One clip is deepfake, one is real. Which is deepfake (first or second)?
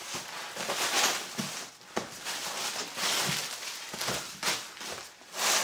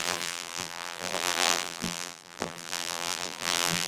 second